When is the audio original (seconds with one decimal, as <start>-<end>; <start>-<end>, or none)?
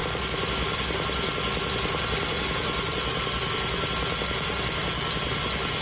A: 0.0-5.8